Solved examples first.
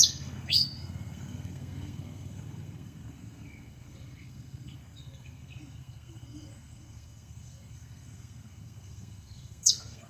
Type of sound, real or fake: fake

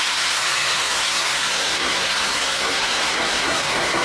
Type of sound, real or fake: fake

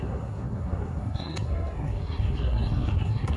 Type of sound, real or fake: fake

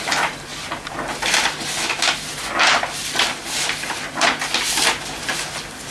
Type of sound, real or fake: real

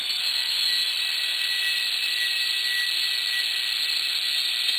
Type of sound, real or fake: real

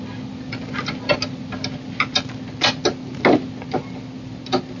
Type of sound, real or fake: real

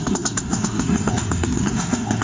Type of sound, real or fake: fake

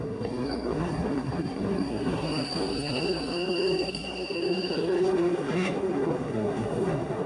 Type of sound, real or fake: fake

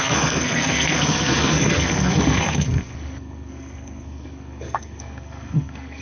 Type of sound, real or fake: fake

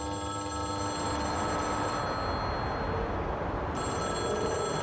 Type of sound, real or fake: real